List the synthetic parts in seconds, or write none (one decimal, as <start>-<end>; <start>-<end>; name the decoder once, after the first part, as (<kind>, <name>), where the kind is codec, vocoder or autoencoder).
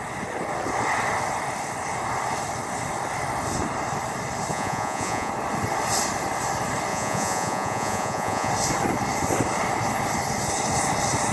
4.5-5.3 (vocoder, Vocos); 6.9-8.5